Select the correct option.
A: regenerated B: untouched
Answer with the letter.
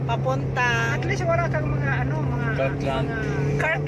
B